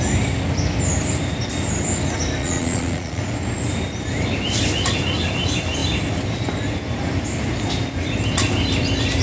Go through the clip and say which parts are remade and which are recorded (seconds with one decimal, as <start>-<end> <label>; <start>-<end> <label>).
0.0-2.4 recorded; 2.4-3.2 remade; 3.2-9.2 recorded